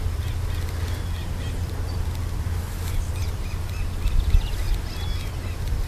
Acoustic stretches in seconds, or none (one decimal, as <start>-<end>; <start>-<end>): 0.0-3.2; 3.7-5.9